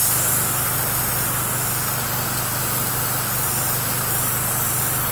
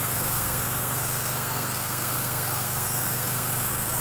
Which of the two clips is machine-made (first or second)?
second